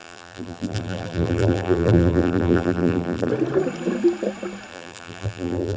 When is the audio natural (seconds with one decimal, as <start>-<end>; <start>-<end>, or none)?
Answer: 3.3-4.7